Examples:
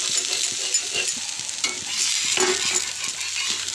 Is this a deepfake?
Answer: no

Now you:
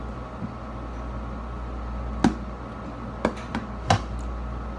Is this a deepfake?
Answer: no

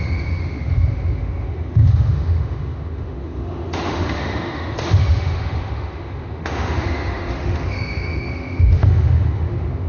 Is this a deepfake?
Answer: yes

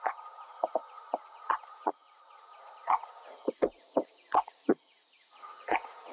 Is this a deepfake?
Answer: yes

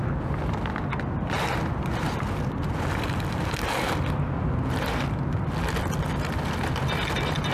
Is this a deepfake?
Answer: no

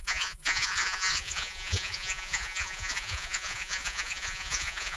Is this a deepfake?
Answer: yes